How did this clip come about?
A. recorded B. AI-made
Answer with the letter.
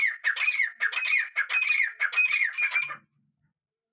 A